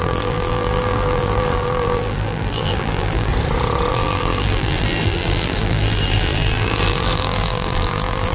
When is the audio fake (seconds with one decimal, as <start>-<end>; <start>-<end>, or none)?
0.0-3.3; 3.9-8.3